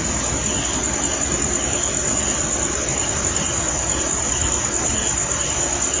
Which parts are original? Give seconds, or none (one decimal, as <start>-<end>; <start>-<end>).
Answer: 0.0-6.0